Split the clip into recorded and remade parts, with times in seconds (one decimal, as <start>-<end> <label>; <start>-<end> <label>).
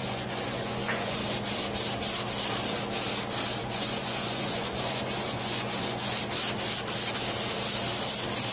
0.0-1.2 remade; 1.2-3.6 recorded; 3.6-6.2 remade; 6.2-8.5 recorded